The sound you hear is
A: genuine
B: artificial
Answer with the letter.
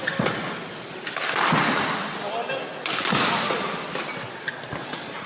A